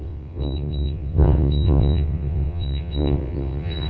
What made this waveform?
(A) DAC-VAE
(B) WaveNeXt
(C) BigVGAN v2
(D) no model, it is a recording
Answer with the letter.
B